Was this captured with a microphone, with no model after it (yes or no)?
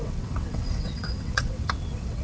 no